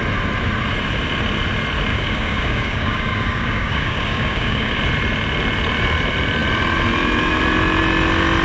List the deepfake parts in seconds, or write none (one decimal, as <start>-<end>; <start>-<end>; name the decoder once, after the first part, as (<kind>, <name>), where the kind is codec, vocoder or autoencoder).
1.9-4.8 (codec, DAC)